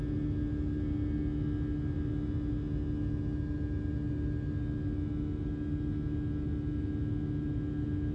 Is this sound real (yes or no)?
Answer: yes